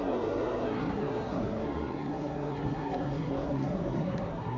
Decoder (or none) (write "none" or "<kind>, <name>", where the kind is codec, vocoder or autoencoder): codec, SNAC